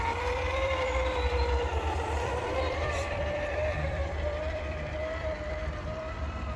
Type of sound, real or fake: fake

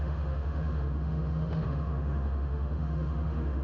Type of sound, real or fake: fake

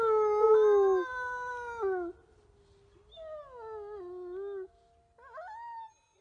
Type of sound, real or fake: real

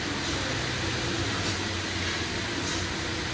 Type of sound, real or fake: real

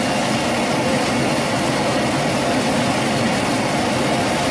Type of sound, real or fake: real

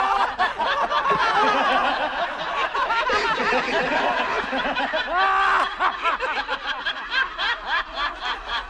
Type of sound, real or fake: real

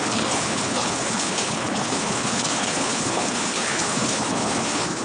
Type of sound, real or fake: fake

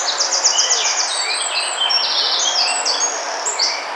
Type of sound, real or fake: real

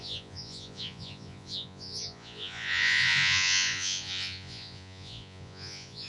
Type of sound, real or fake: fake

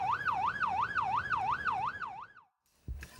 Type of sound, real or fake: real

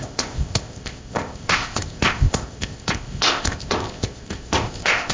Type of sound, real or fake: fake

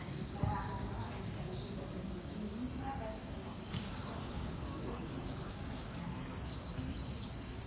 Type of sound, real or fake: fake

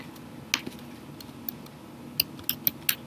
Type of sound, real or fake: real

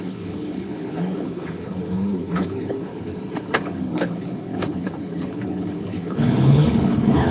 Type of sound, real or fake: fake